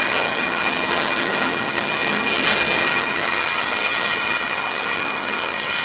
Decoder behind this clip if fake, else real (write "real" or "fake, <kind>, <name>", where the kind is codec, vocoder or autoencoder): fake, vocoder, HiFi-GAN